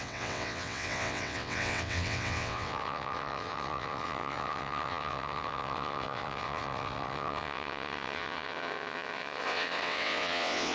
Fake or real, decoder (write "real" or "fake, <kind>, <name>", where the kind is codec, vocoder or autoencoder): fake, vocoder, WaveNeXt